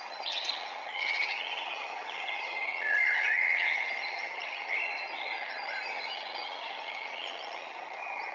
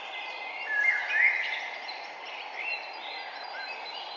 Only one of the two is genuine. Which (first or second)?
second